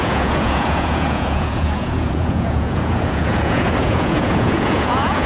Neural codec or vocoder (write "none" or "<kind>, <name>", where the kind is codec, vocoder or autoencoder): vocoder, Vocos